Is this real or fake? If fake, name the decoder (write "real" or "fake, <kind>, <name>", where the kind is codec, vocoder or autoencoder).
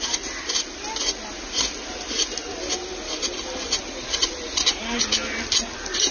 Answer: real